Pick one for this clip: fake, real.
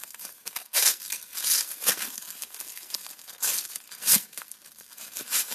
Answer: fake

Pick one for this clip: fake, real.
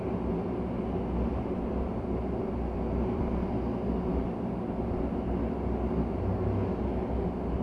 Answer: real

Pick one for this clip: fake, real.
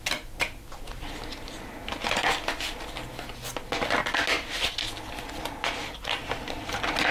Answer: real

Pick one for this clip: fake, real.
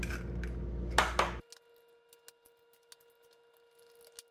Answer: real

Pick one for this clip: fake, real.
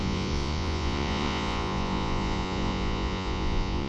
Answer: fake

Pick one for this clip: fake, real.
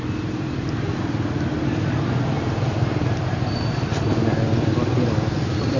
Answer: real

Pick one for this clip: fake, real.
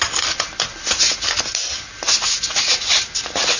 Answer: real